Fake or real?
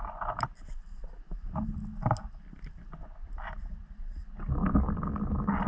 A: real